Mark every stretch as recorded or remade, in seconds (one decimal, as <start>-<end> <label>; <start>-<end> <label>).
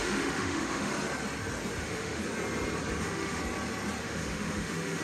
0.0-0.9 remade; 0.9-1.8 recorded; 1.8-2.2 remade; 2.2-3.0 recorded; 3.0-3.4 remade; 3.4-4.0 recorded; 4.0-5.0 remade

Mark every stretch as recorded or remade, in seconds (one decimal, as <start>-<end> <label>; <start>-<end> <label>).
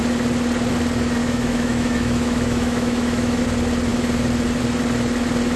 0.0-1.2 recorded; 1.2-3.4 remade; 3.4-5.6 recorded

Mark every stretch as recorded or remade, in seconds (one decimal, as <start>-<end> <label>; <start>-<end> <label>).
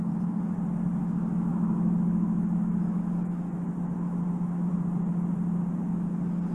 0.0-1.5 recorded; 1.5-4.7 remade; 4.7-6.5 recorded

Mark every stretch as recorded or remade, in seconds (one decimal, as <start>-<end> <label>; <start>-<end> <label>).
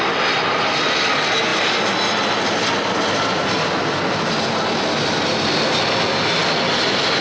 0.0-7.2 recorded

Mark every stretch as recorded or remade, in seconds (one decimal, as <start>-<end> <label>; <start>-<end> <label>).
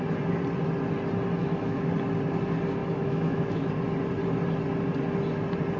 0.0-1.4 recorded; 1.4-1.9 remade; 1.9-2.8 recorded; 2.8-3.7 remade; 3.7-5.8 recorded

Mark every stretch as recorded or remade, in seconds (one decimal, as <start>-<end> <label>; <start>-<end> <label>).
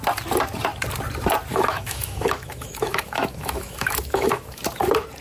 0.0-1.5 recorded; 1.5-4.6 remade; 4.6-5.2 recorded